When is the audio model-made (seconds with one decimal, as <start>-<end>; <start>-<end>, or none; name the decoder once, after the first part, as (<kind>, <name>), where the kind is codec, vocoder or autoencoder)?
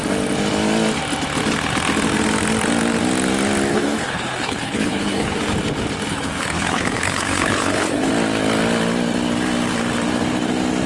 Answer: 3.7-5.4 (codec, HILCodec); 6.1-8.1